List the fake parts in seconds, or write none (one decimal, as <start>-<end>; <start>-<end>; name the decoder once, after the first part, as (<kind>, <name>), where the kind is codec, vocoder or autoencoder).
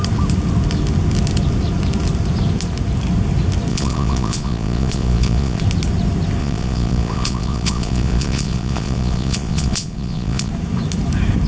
3.7-5.6 (vocoder, Vocos); 6.4-10.5